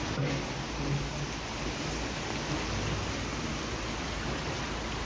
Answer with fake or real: real